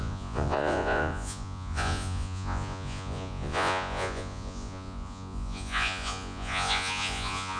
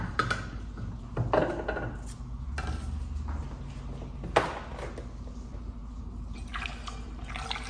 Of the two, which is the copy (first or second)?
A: first